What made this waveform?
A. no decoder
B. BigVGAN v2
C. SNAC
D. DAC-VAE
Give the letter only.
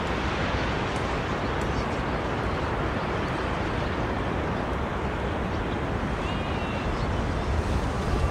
A